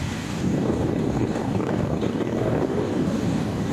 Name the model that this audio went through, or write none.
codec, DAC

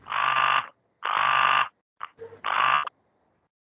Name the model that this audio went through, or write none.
none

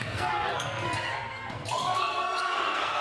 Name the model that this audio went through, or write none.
codec, SNAC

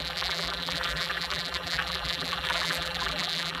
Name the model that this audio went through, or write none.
vocoder, BigVGAN v2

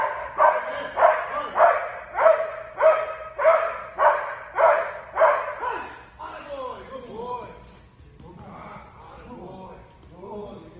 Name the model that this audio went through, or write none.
none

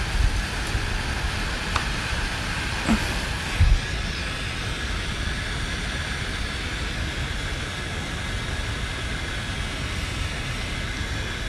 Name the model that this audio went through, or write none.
none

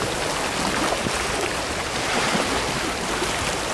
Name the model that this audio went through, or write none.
none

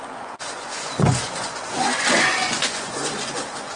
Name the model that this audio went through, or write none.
vocoder, Vocos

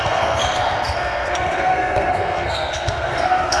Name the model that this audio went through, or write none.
codec, SNAC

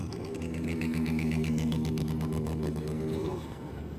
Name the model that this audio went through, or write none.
codec, SNAC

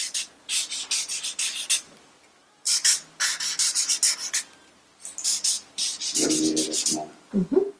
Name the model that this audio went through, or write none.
none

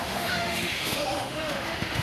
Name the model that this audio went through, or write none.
autoencoder, DAC-VAE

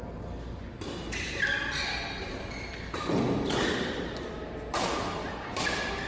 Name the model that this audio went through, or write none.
none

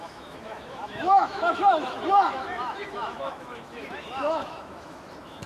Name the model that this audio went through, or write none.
autoencoder, DAC-VAE